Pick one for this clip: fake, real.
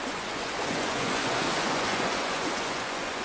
fake